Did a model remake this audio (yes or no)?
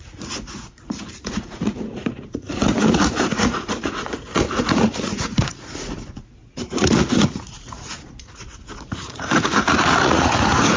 yes